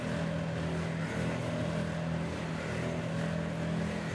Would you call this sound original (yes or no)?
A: yes